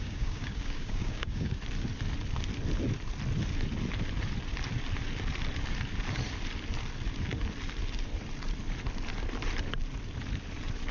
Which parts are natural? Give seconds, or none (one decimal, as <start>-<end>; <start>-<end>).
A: 1.6-10.9